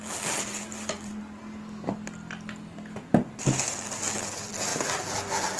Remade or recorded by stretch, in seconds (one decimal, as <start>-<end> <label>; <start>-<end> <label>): 0.0-1.4 remade; 1.4-3.7 recorded; 3.7-5.6 remade